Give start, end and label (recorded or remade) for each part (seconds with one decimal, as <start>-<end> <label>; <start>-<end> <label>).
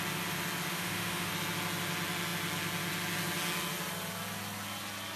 0.0-0.7 recorded; 0.7-1.3 remade; 1.3-5.2 recorded